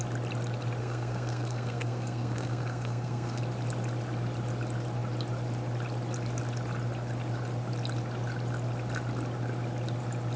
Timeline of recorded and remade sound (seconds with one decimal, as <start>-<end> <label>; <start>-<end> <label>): 0.0-0.8 recorded; 0.8-3.4 remade; 3.4-10.4 recorded